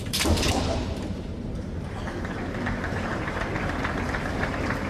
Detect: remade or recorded remade